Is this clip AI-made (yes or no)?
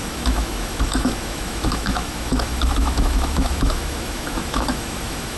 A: yes